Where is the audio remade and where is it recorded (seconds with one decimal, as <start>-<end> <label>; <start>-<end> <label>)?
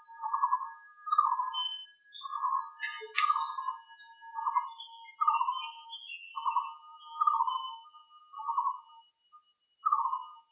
0.0-10.5 recorded